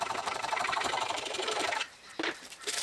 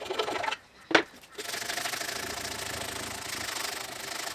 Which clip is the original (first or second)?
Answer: second